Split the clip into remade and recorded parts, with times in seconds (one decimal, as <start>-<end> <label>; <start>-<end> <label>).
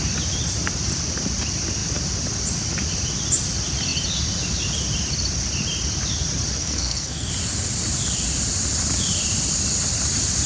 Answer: 0.0-6.6 recorded; 6.6-7.3 remade; 7.3-10.5 recorded